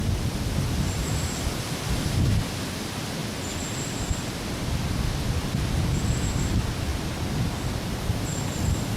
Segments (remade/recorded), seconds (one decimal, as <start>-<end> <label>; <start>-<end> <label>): 0.0-9.0 recorded